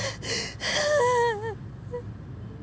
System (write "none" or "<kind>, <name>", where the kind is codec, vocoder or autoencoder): none